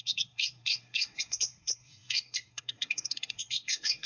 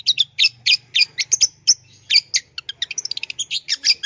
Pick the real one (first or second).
second